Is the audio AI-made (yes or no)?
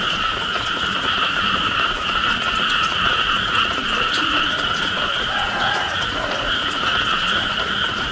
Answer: yes